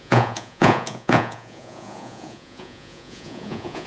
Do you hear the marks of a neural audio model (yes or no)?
yes